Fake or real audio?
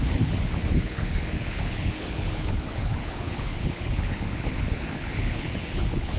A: fake